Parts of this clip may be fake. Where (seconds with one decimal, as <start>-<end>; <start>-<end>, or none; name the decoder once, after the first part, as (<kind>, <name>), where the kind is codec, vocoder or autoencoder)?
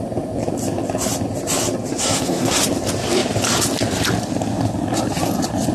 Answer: 1.9-2.6 (codec, SNAC)